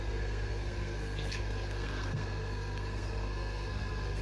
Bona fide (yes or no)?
no